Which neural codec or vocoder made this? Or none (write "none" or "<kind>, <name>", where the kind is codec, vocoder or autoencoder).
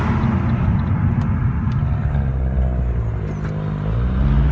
none